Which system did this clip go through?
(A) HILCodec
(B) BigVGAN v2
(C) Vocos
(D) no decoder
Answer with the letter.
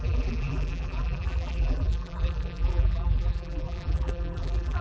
B